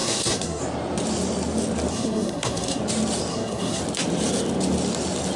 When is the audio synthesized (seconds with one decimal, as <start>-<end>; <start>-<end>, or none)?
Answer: 0.0-0.6; 1.9-2.8; 3.3-3.8